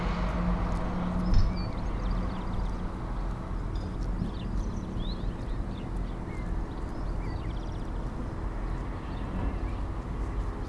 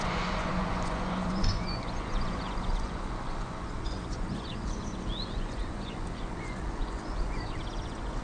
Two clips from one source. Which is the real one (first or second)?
first